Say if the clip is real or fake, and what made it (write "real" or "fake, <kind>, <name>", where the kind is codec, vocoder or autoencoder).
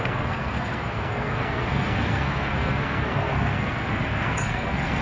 fake, codec, SNAC